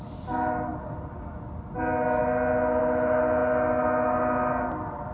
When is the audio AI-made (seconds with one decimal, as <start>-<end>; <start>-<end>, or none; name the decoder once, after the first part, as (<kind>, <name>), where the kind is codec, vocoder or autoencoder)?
none